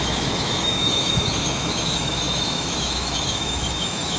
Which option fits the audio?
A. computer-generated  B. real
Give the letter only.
A